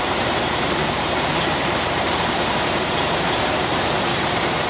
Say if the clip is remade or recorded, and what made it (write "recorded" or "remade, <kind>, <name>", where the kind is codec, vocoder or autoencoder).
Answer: remade, vocoder, BigVGAN v2